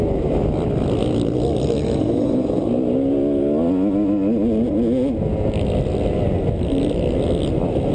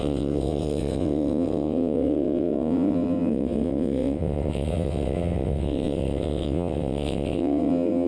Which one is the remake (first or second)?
second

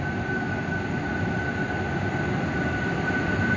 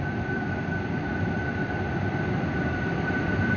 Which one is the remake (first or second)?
second